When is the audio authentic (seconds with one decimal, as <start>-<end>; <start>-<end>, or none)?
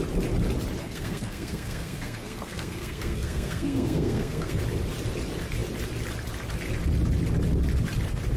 0.0-0.8; 4.6-8.4